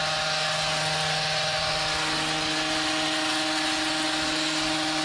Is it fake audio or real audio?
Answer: real